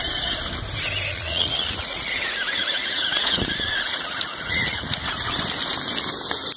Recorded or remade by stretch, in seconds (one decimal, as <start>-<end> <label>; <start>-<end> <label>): 0.0-1.1 recorded; 1.1-5.1 remade; 5.1-6.6 recorded